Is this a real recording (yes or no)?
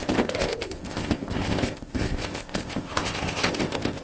no